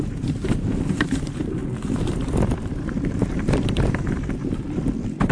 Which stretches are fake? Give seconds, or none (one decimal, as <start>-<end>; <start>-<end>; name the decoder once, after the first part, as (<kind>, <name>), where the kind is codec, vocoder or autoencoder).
0.0-1.6 (vocoder, BigVGAN v2); 2.5-5.3